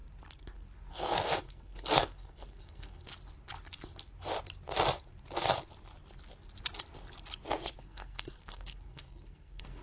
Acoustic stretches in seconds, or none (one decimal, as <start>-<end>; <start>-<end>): 0.0-0.9; 3.1-7.7